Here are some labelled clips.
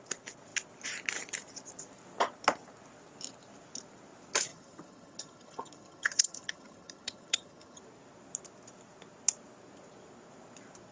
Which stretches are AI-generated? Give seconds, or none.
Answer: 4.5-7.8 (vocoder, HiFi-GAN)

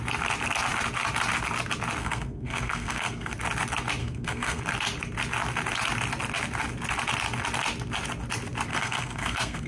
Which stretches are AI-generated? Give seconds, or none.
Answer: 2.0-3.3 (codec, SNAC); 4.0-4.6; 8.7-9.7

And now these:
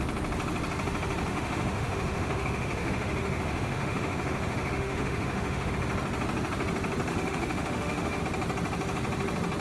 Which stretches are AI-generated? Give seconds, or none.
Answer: 1.3-5.7 (autoencoder, DAC-VAE); 7.1-8.2

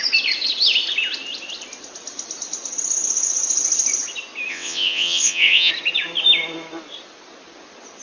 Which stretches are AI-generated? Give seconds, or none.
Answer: 4.5-5.7 (vocoder, WaveNeXt)

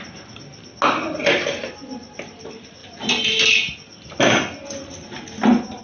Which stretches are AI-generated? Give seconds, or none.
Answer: none

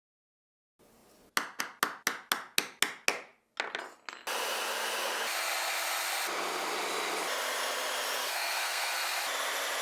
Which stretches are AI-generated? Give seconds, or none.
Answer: 8.2-8.9 (codec, SNAC)

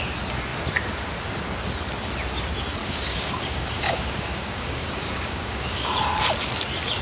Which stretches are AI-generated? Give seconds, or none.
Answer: 2.8-6.1 (codec, DAC)